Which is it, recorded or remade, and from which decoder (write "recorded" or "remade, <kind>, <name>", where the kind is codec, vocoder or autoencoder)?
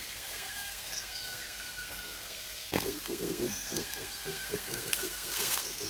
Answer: remade, codec, SNAC